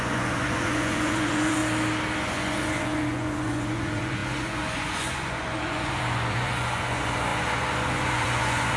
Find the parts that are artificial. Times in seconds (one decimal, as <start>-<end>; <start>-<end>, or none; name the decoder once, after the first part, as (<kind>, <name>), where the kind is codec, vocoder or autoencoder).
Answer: 0.0-1.6 (vocoder, Vocos); 2.2-8.8